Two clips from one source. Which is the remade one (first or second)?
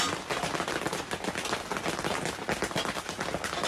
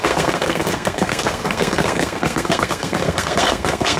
second